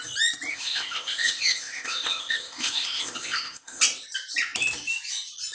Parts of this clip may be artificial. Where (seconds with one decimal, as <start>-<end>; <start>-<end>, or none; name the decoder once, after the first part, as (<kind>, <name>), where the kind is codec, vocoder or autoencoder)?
0.5-3.8 (codec, ZipCodec)

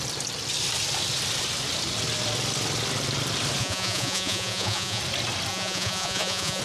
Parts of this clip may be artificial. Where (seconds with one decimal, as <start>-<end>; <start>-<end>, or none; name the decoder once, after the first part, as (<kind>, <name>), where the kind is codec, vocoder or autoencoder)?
3.6-5.0 (vocoder, Vocos); 5.5-6.6

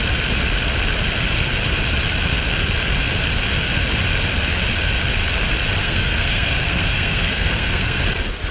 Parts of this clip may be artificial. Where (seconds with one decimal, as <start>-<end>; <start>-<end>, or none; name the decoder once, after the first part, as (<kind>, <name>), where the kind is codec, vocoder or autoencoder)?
5.8-8.0 (codec, SNAC)

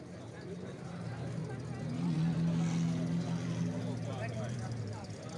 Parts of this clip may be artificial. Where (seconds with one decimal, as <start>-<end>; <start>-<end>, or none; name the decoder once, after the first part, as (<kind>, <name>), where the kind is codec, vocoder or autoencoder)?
0.0-1.4 (vocoder, BigVGAN v2); 4.6-5.4

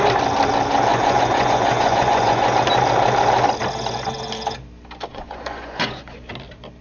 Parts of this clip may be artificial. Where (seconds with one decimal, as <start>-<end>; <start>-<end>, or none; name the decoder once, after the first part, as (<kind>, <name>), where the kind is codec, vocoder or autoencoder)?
0.9-2.5 (vocoder, Vocos); 5.1-6.2

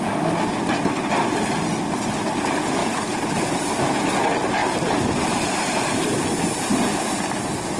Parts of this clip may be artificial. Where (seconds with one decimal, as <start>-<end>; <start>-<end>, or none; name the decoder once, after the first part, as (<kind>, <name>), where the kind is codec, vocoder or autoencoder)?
2.8-4.0 (vocoder, BigVGAN v2); 4.6-6.5